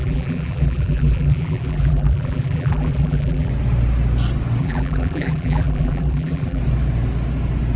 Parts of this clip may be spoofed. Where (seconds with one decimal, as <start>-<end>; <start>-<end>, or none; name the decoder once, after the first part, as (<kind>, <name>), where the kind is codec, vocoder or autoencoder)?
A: 0.0-3.5 (vocoder, BigVGAN v2); 4.6-6.6